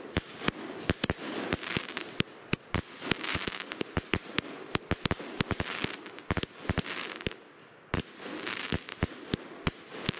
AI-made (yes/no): no